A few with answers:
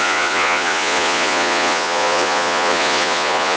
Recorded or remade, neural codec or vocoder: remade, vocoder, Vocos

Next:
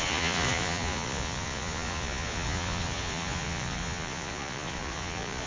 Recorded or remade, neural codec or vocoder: remade, vocoder, Vocos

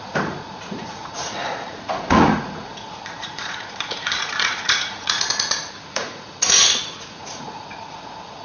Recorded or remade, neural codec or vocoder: remade, vocoder, Vocos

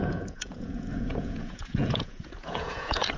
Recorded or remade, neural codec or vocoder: remade, vocoder, Vocos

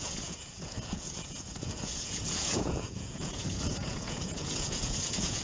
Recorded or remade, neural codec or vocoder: remade, vocoder, Vocos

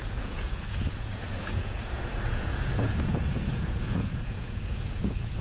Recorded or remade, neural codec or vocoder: remade, vocoder, Vocos